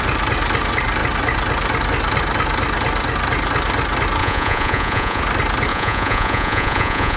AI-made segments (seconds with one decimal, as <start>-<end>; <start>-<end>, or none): 4.2-5.2; 5.7-7.2